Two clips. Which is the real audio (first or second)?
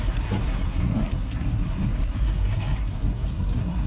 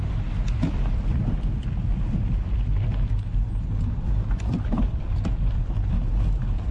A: second